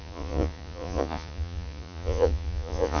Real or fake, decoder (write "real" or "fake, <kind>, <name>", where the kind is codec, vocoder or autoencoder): fake, vocoder, Vocos